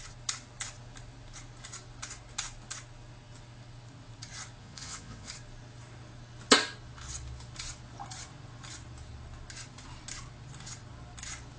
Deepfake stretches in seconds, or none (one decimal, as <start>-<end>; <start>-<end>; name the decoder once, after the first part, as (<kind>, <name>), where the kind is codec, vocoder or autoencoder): 4.6-5.3 (vocoder, Vocos)